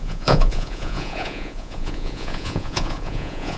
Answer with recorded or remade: remade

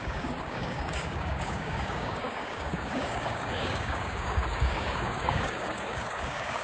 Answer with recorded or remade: remade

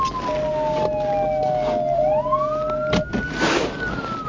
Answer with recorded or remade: recorded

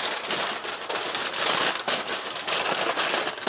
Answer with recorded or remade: recorded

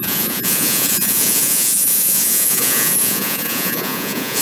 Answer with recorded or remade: remade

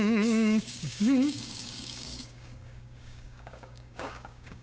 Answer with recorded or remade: remade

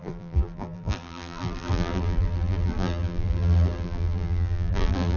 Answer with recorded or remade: remade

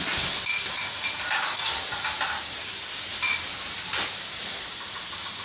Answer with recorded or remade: recorded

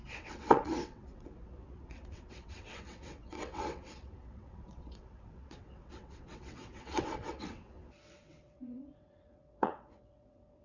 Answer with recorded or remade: remade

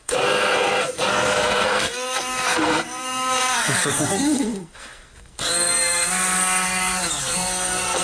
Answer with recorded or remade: remade